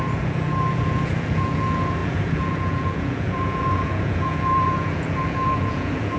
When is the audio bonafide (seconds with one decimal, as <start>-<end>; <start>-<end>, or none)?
none